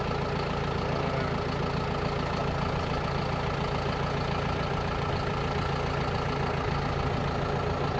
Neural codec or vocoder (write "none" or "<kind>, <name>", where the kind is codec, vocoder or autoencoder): none